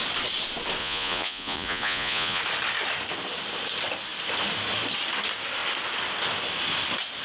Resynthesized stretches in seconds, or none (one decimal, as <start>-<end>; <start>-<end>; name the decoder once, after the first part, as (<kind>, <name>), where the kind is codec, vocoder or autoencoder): 0.8-2.4 (vocoder, Vocos)